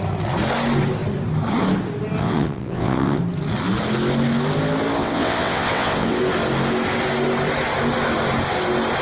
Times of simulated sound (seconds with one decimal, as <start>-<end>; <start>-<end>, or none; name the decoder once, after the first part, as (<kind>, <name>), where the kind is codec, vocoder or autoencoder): 2.2-3.2 (vocoder, WaveNeXt); 5.0-6.2